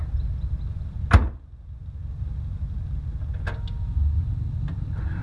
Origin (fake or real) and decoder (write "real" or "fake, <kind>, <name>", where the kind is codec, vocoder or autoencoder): real